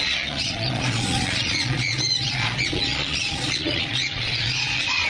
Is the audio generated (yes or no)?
yes